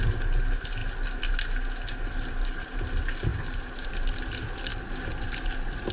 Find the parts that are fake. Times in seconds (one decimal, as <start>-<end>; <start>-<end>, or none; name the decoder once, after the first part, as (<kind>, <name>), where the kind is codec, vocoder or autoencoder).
3.3-3.9 (vocoder, BigVGAN v2)